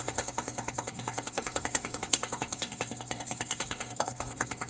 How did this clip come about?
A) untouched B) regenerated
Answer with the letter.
B